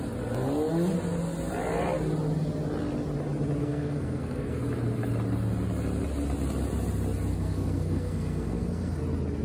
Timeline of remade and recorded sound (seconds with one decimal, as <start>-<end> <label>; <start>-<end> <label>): 0.0-3.6 recorded; 3.6-4.6 remade; 4.6-7.3 recorded; 7.3-9.0 remade; 9.0-9.4 recorded